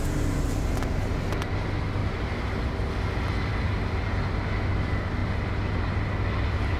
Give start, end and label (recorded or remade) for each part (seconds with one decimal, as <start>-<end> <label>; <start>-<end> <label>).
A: 0.0-2.0 recorded; 2.0-2.9 remade; 2.9-3.5 recorded; 3.5-4.1 remade; 4.1-6.8 recorded